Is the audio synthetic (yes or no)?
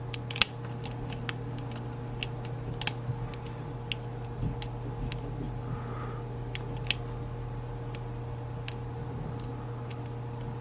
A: no